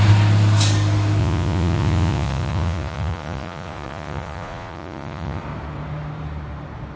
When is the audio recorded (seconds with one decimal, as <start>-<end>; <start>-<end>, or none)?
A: 0.0-1.2; 5.4-7.0